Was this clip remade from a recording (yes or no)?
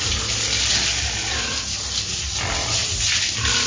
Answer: no